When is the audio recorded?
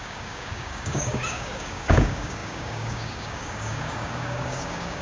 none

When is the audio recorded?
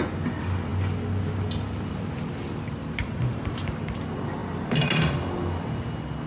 0.0-3.0; 3.8-6.3